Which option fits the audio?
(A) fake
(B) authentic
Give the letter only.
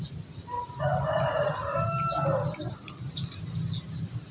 B